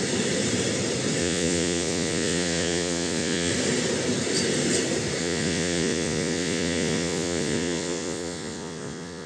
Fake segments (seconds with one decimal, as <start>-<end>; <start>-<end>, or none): 1.2-3.5; 5.2-9.3